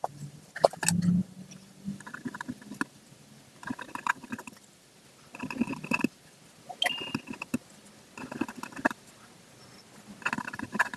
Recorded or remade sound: recorded